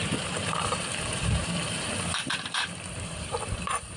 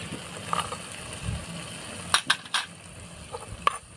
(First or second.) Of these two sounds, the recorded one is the second